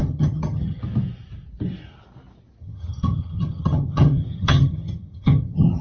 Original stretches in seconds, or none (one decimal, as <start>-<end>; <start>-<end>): 0.8-2.6